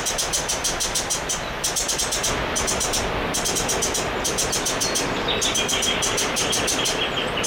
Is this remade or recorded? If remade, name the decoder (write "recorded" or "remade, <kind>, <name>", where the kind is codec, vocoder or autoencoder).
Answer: recorded